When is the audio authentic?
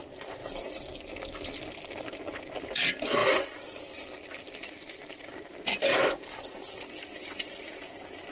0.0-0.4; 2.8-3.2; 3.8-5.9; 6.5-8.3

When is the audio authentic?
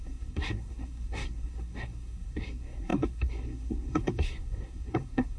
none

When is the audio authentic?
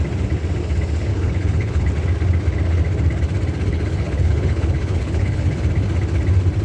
0.0-1.1; 1.9-3.7; 5.6-6.6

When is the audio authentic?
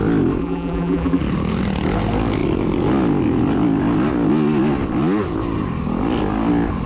0.0-0.4; 1.2-6.9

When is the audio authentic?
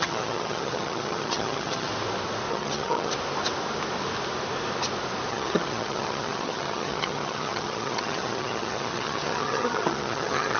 1.9-2.5; 3.1-5.3